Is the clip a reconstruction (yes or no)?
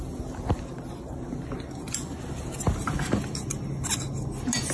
no